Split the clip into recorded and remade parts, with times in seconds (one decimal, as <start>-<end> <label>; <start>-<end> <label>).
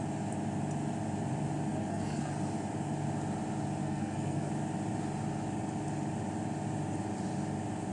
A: 0.0-1.7 recorded; 1.7-2.3 remade; 2.3-3.8 recorded; 3.8-4.5 remade; 4.5-7.9 recorded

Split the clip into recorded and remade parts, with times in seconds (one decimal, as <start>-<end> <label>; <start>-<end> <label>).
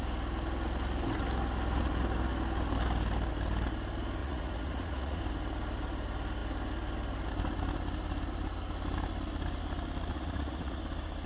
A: 0.0-4.2 recorded; 4.2-5.2 remade; 5.2-10.1 recorded; 10.1-10.8 remade; 10.8-11.3 recorded